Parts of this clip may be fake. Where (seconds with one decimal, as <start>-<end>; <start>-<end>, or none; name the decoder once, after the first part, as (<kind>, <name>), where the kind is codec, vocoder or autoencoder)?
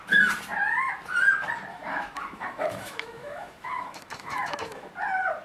1.7-4.9 (autoencoder, DAC-VAE)